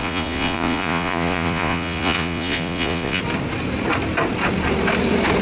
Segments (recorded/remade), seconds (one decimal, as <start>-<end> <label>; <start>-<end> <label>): 0.0-3.2 remade; 3.2-5.4 recorded